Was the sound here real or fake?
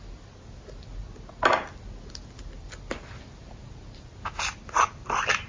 real